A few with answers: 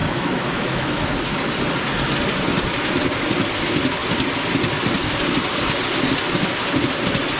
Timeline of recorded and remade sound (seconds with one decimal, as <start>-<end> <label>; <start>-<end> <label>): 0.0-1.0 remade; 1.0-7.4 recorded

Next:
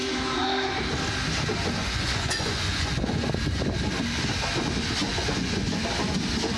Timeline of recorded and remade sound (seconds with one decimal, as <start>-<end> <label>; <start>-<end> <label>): 0.0-1.8 recorded; 1.8-3.6 remade; 3.6-5.0 recorded; 5.0-5.8 remade; 5.8-6.6 recorded

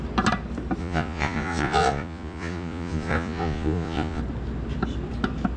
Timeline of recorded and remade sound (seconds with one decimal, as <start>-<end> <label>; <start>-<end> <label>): 0.0-0.8 recorded; 0.8-4.2 remade; 4.2-5.6 recorded